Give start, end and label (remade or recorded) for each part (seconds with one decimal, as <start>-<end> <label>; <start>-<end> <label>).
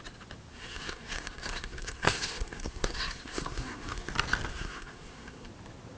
0.0-0.5 recorded; 0.5-4.1 remade; 4.1-4.5 recorded; 4.5-5.5 remade; 5.5-6.0 recorded